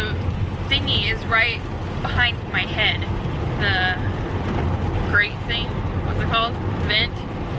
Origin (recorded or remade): recorded